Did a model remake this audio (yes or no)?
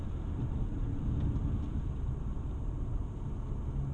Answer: no